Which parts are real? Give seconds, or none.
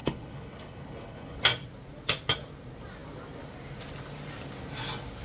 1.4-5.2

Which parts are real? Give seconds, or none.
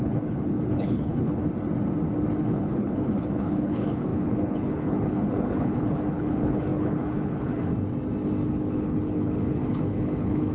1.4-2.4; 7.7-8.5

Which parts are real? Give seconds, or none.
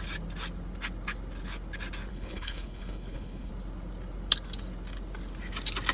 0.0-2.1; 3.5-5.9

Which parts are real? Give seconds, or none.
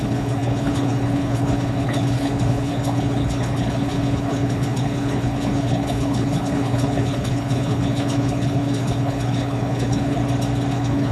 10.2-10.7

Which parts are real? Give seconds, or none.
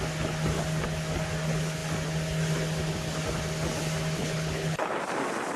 0.0-4.2; 4.9-5.6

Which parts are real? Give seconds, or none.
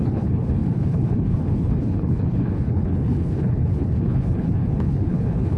none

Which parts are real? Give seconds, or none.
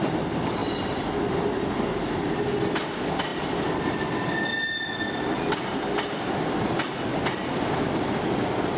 0.0-8.8